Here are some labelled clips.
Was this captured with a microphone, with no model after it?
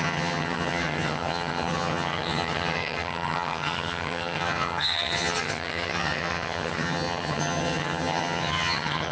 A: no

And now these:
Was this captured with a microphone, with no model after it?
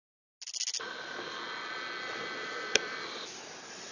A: yes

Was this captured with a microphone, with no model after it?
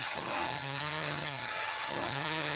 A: no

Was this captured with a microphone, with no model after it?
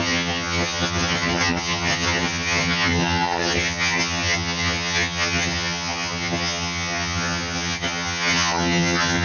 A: no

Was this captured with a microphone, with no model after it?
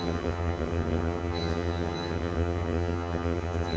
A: no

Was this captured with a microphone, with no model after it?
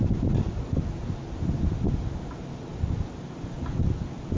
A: yes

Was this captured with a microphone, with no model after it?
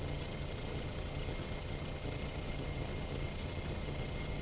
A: no